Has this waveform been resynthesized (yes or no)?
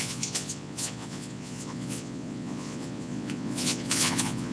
yes